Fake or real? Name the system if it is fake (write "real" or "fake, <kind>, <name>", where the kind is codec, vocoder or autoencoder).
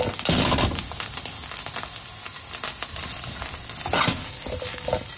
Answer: real